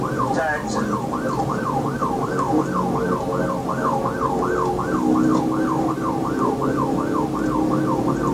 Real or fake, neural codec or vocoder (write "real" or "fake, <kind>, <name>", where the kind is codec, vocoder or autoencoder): real